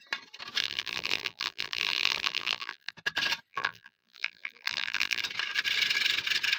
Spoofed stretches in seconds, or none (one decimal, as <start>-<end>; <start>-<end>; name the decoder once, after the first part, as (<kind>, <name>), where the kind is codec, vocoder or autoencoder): 0.6-2.9 (vocoder, BigVGAN v2); 3.5-5.2